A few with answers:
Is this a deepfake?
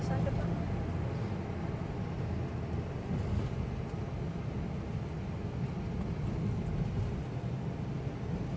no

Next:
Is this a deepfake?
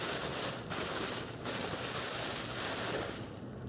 no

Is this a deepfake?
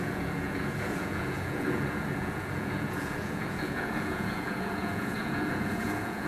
yes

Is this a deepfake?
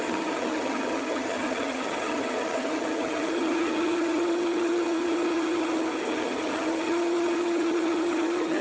yes